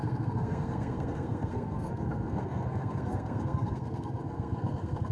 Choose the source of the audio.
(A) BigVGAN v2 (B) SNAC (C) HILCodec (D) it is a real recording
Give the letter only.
B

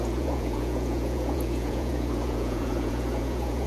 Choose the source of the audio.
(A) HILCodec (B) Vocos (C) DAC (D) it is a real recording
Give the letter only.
B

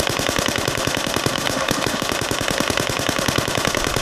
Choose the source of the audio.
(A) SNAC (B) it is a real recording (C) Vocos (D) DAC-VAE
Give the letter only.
D